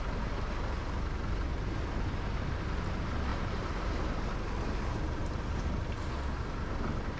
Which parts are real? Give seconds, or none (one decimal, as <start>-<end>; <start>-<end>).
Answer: 0.0-3.3; 4.0-5.2; 5.9-7.2